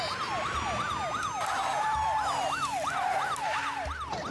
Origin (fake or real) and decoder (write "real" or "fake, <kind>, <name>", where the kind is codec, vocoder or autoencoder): real